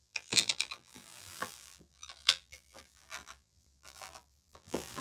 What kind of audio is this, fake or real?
fake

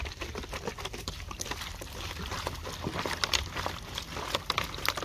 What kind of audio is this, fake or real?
real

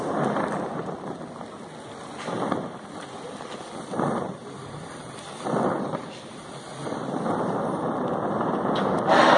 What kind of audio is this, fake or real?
fake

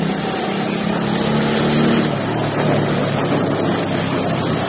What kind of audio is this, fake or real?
real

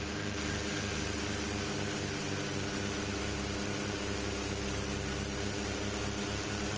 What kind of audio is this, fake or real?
real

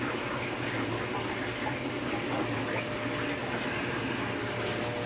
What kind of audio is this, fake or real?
real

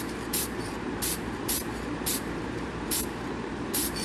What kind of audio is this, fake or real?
fake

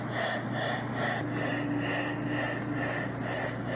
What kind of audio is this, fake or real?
real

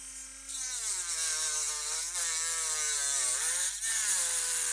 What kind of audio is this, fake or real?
real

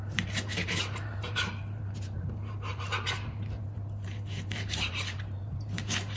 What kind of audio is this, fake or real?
fake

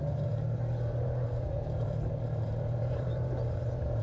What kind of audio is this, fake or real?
fake